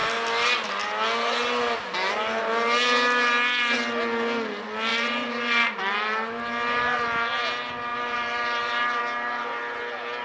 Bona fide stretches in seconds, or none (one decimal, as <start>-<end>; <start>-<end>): 0.0-4.9; 5.8-7.9; 9.0-10.2